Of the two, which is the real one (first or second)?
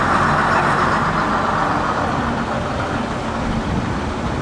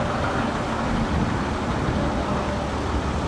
second